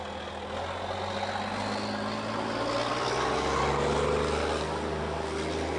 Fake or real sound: real